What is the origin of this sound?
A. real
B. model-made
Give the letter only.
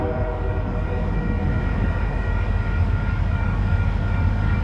B